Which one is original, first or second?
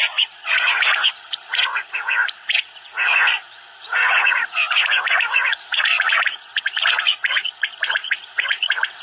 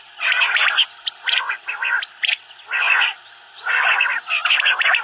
second